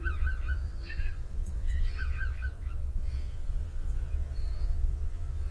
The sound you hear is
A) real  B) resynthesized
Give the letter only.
B